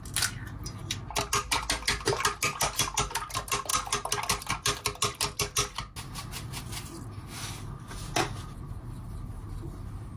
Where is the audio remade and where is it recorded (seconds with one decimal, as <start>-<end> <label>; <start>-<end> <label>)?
0.0-10.2 recorded